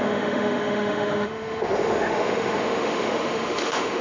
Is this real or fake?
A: fake